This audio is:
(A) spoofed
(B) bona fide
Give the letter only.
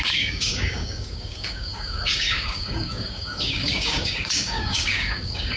A